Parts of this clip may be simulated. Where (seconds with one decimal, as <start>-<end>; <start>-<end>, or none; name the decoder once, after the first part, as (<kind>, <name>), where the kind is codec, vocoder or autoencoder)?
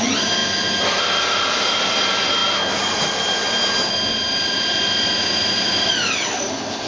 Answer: 0.0-2.4 (vocoder, BigVGAN v2); 6.5-6.9